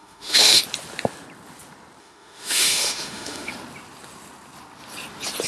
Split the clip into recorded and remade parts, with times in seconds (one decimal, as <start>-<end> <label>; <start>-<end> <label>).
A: 0.0-0.6 remade; 0.6-2.0 recorded; 2.0-3.5 remade; 3.5-5.5 recorded